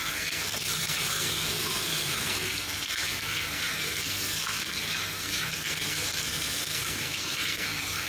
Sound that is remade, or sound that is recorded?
remade